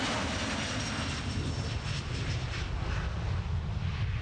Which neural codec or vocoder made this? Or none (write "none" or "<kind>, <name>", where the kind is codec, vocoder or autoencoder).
none